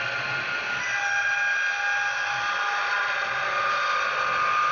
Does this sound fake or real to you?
real